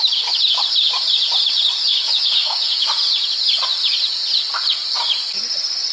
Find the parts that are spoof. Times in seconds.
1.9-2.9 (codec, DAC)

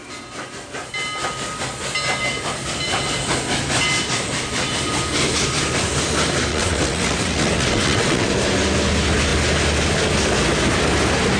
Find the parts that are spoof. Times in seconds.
6.5-8.3 (vocoder, WaveNeXt)

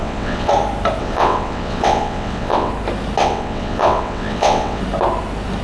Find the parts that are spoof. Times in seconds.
0.0-0.5 (vocoder, WaveNeXt); 1.0-2.7; 3.2-4.8

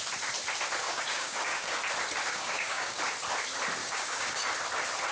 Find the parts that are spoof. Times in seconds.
0.8-1.8 (codec, DAC); 2.3-3.0; 3.8-4.4

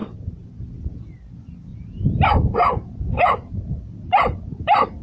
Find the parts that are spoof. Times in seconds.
0.0-0.6 (vocoder, BigVGAN v2); 1.7-5.0

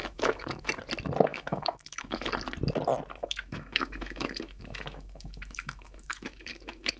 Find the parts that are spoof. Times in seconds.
0.0-0.7 (autoencoder, DAC-VAE); 1.3-2.3; 3.2-7.0

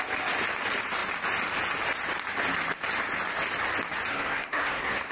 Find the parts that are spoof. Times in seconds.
4.1-5.1 (codec, SNAC)

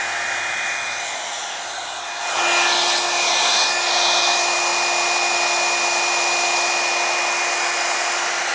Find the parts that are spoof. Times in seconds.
none